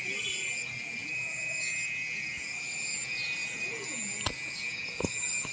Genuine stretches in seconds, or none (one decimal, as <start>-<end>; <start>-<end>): 0.0-5.5